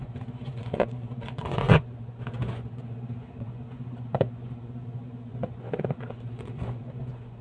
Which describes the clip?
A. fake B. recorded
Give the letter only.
A